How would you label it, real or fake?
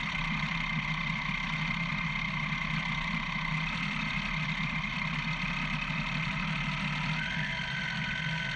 real